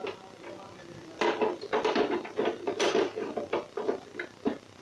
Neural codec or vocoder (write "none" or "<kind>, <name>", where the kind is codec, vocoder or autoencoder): vocoder, BigVGAN v2